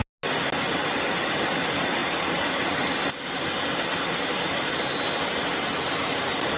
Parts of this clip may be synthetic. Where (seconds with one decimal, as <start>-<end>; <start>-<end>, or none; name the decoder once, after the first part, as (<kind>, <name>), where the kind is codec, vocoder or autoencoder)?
none